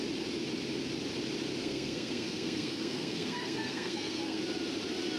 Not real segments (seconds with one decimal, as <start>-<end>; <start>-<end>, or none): 1.6-4.4